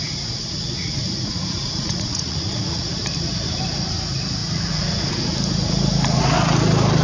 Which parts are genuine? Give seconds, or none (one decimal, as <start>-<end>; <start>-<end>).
2.8-4.4; 5.2-7.0